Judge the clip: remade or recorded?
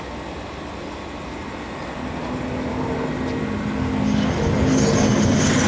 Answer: recorded